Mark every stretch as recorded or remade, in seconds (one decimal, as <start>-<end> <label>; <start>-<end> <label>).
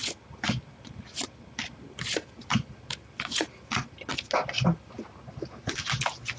0.0-6.4 recorded